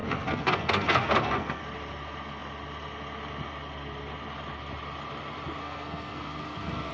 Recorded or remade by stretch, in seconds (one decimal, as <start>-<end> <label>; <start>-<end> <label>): 0.0-1.6 remade; 1.6-5.6 recorded; 5.6-6.9 remade